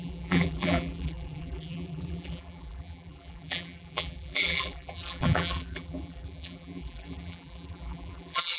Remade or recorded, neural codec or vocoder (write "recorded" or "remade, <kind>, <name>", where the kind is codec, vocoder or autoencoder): remade, vocoder, BigVGAN v2